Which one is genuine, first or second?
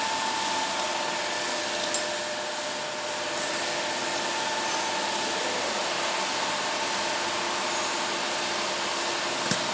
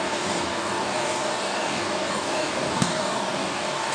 first